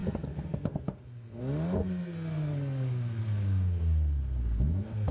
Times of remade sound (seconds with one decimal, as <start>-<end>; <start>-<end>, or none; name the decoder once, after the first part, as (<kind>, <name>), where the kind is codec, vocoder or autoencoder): 0.0-1.4 (codec, SNAC); 1.8-5.1